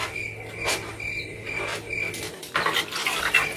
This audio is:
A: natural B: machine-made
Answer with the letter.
A